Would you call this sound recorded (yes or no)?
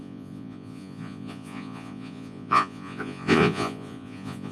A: no